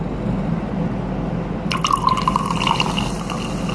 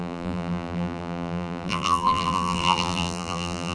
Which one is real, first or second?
first